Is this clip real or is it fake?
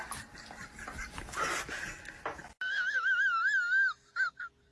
real